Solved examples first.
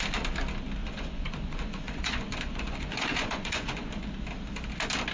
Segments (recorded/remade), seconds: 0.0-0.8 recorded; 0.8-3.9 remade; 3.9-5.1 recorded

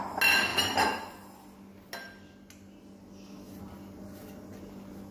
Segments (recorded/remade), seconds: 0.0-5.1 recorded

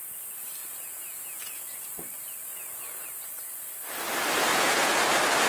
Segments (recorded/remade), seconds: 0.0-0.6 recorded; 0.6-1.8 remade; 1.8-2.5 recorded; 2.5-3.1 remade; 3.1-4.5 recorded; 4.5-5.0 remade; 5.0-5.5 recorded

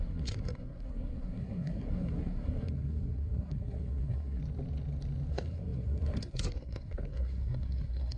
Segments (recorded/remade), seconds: 0.0-4.4 remade; 4.4-5.3 recorded; 5.3-8.2 remade

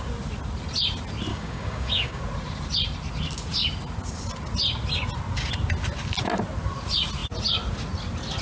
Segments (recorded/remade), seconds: 0.0-1.3 recorded; 1.3-2.2 remade; 2.2-8.4 recorded

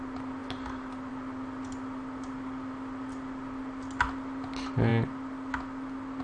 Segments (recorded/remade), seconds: 0.0-6.2 recorded

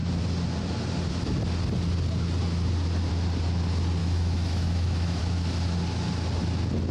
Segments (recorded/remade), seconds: 0.0-4.0 recorded; 4.0-5.2 remade; 5.2-6.9 recorded